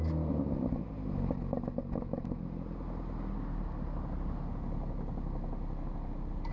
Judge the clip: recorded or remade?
recorded